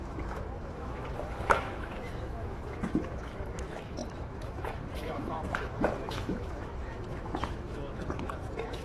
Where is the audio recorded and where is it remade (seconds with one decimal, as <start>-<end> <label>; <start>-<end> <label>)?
0.0-8.8 remade